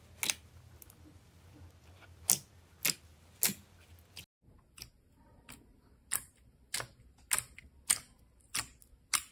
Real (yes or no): yes